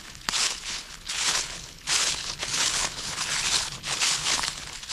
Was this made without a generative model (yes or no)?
no